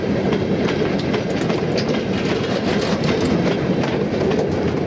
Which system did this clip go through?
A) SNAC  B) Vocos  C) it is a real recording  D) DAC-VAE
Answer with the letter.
C